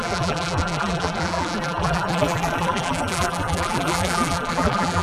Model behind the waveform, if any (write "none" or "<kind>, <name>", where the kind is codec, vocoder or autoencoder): vocoder, BigVGAN v2